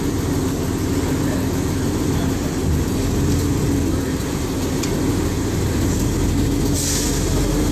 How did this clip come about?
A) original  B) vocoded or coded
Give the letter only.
A